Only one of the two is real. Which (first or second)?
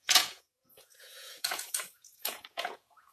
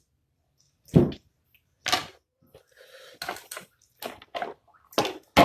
second